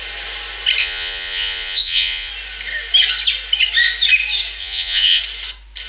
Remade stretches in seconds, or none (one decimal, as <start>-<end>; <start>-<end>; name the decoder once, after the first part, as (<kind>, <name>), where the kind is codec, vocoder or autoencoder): 0.8-2.3 (vocoder, Vocos); 4.6-5.2